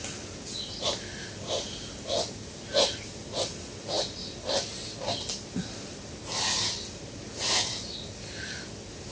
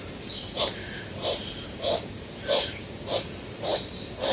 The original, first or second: first